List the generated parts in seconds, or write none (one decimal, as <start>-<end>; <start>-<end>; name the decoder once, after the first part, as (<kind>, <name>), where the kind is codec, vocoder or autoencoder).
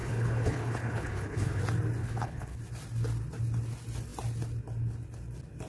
0.0-1.6 (codec, HILCodec); 2.0-2.6